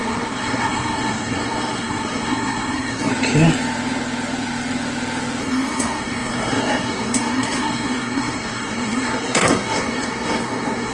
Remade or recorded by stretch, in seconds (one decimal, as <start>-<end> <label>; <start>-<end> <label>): 0.0-3.1 remade; 3.1-5.4 recorded; 5.4-10.9 remade